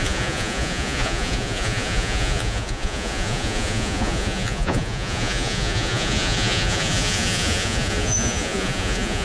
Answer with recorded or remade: remade